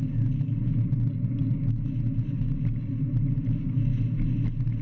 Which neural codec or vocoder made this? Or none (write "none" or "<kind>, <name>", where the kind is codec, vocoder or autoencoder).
none